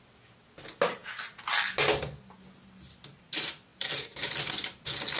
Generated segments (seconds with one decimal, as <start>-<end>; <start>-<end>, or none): 3.7-4.3

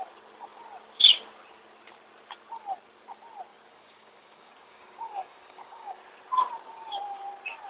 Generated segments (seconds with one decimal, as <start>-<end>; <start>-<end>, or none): 3.5-6.0

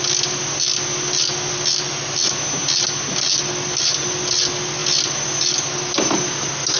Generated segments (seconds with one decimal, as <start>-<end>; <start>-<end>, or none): none

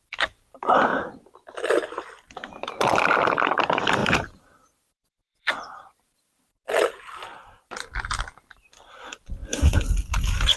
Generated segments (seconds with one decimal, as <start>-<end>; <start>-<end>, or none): 0.0-0.9; 2.0-9.4; 10.1-10.6

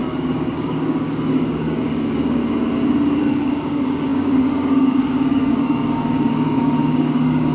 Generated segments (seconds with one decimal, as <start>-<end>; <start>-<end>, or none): 0.0-2.4; 3.2-7.5

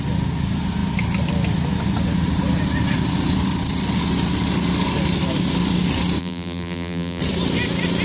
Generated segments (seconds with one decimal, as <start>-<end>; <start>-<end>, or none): 6.2-7.2

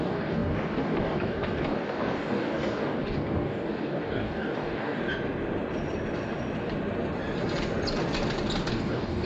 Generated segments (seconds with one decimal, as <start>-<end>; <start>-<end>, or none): 0.0-5.0; 8.7-9.3

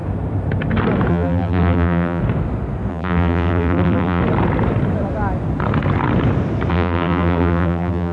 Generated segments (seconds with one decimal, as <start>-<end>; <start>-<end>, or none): 1.1-2.2; 2.9-4.2; 6.7-8.1